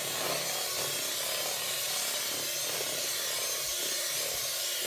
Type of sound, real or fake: real